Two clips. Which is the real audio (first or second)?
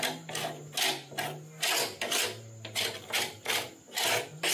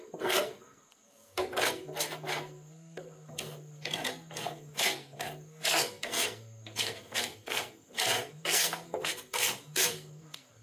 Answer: first